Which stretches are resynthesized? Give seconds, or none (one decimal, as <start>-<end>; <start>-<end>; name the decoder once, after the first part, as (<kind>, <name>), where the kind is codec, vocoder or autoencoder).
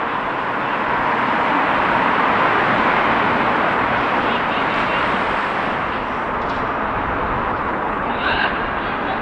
7.5-8.6 (codec, HILCodec)